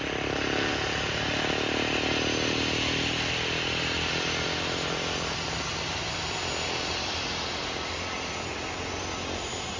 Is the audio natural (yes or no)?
yes